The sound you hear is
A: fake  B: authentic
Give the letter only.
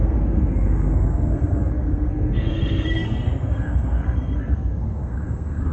A